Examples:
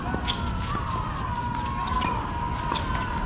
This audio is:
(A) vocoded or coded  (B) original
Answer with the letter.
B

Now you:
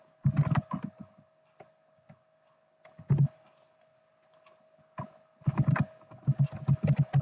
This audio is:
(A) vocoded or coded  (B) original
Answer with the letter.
B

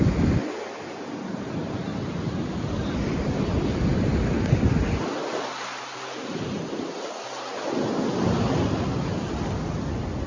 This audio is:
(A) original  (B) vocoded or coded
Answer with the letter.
A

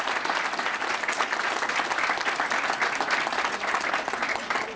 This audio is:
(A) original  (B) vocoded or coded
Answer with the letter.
A